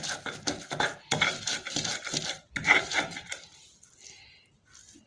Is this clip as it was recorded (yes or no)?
yes